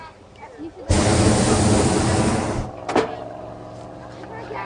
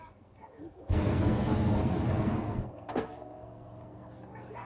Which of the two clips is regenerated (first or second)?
second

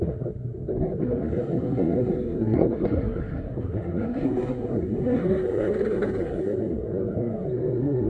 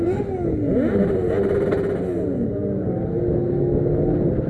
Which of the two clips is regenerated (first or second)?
first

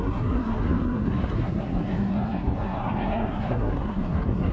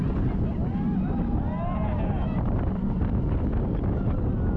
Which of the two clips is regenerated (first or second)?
first